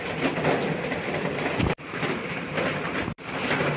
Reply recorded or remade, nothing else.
remade